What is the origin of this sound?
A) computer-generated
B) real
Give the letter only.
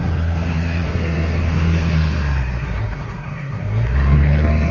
A